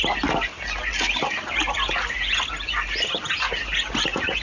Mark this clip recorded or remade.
recorded